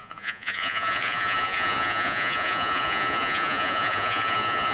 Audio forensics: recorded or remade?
remade